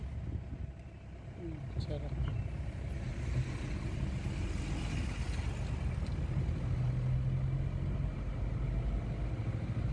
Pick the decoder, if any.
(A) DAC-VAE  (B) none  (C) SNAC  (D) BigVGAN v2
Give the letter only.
B